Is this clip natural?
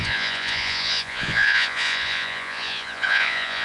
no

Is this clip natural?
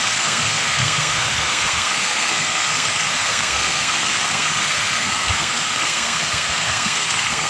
no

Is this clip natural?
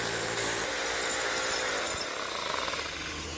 yes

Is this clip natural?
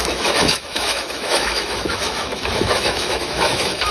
no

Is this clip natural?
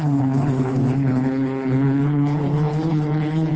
no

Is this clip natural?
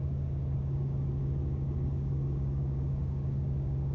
no